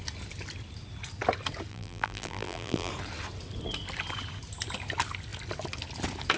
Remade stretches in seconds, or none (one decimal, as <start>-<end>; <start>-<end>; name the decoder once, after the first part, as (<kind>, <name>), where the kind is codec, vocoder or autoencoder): 1.7-2.9 (vocoder, BigVGAN v2)